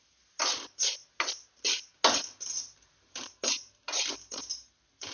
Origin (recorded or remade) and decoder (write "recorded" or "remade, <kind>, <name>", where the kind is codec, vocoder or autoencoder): recorded